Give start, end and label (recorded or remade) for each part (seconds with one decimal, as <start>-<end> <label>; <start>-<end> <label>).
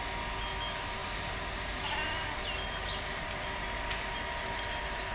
0.0-5.1 recorded